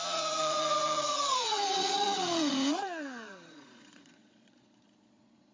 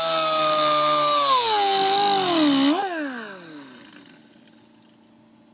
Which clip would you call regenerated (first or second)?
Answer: first